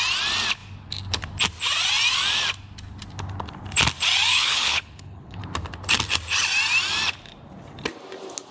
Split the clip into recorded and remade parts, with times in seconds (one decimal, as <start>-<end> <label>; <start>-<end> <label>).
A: 0.0-4.3 recorded; 4.3-5.4 remade; 5.4-8.5 recorded